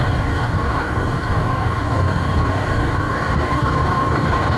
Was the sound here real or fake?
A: fake